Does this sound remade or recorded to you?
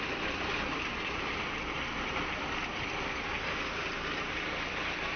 remade